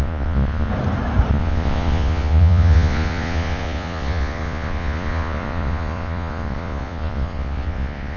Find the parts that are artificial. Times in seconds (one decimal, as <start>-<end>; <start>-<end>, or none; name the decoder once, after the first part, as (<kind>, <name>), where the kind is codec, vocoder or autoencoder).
0.0-0.7 (vocoder, Vocos); 1.3-8.2